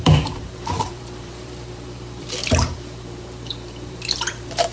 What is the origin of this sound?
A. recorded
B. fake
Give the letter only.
B